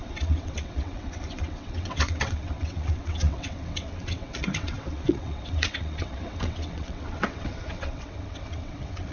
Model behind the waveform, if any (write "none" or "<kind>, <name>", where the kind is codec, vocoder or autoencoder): vocoder, WaveNeXt